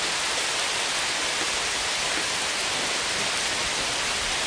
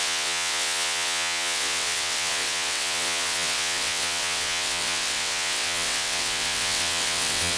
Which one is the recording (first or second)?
first